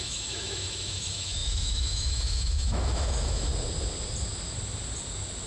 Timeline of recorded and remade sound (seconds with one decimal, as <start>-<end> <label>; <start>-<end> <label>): 0.0-3.5 remade; 3.5-5.5 recorded

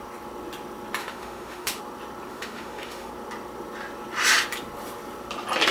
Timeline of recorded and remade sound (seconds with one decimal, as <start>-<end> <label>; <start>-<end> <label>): 0.0-1.0 recorded; 1.0-1.8 remade; 1.8-2.3 recorded; 2.3-3.1 remade; 3.1-5.7 recorded

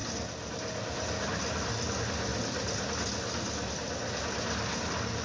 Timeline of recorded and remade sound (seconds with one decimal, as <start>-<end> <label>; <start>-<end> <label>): 0.0-5.2 recorded

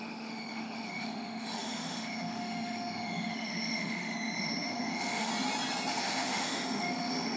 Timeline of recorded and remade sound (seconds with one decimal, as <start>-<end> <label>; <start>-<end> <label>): 0.0-5.3 remade; 5.3-5.9 recorded; 5.9-7.4 remade

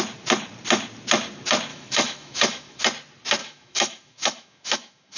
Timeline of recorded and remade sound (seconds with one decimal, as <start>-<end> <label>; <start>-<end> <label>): 0.0-1.7 recorded; 1.7-2.8 remade; 2.8-3.4 recorded; 3.4-5.2 remade

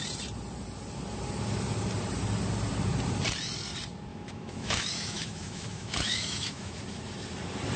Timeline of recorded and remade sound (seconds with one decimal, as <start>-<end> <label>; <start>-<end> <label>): 0.0-4.1 recorded; 4.1-6.8 remade; 6.8-7.8 recorded

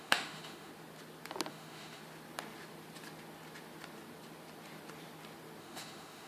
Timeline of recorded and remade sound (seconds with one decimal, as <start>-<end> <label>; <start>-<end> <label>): 0.0-0.7 remade; 0.7-1.5 recorded; 1.5-2.0 remade; 2.0-5.6 recorded; 5.6-6.3 remade

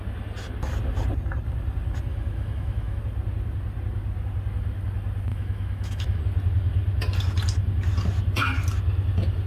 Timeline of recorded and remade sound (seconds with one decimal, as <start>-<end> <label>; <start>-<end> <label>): 0.0-2.1 recorded; 2.1-3.0 remade; 3.0-5.3 recorded; 5.3-6.2 remade; 6.2-9.5 recorded